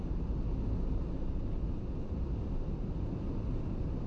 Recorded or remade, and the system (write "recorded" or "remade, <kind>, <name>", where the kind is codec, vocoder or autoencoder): recorded